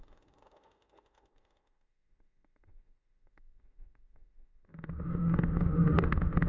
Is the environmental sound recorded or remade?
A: remade